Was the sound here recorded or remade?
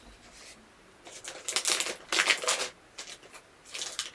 recorded